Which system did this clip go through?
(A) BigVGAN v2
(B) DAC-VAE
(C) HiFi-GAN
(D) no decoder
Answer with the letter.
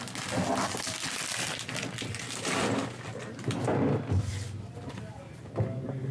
D